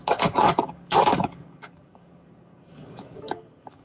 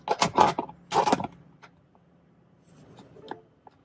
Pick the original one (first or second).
second